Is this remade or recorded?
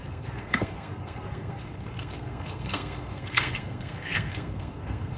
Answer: remade